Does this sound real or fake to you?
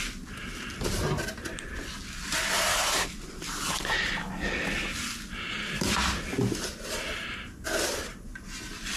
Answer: real